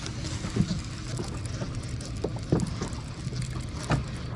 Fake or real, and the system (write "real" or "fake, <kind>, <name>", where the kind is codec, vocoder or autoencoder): real